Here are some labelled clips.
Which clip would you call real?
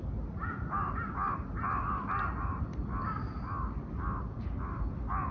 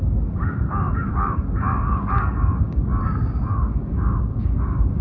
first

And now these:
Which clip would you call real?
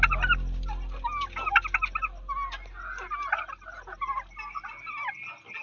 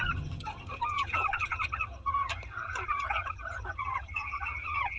first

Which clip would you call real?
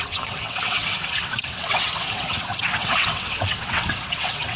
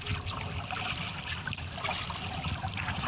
second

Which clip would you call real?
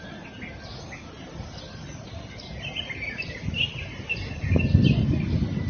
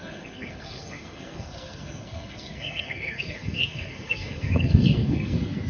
first